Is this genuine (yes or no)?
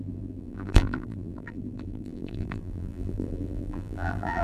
no